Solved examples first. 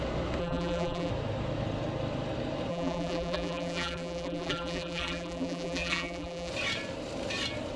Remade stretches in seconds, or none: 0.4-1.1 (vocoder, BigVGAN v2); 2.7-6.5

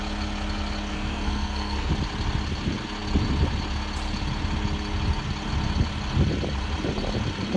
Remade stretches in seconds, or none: 0.9-1.9 (codec, SNAC)

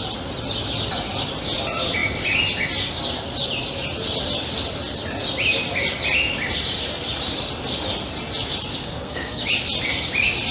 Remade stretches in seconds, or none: 8.8-9.4 (codec, SNAC)

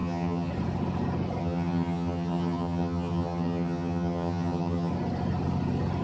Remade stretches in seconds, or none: 0.0-0.5 (vocoder, HiFi-GAN); 1.4-4.9

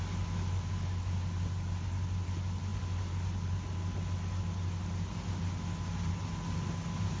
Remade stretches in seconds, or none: none

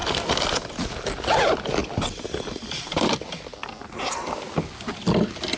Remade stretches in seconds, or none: none

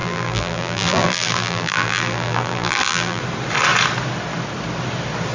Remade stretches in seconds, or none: 0.0-3.2 (vocoder, BigVGAN v2)

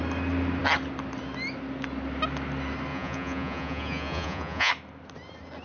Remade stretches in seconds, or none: 2.9-4.7 (vocoder, Vocos)